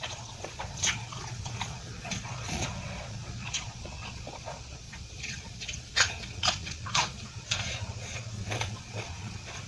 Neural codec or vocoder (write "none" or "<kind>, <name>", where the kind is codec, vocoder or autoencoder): vocoder, Vocos